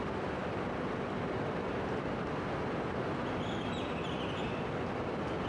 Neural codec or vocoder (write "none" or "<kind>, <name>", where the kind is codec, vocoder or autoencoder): none